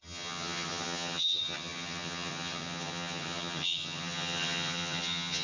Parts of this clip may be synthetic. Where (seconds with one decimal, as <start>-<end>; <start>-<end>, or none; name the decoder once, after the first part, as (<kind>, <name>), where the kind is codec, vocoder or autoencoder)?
0.0-5.4 (vocoder, HiFi-GAN)